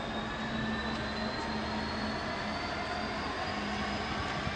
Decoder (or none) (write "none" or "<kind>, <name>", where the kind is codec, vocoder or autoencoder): none